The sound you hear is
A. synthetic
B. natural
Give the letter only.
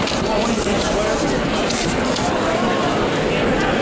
B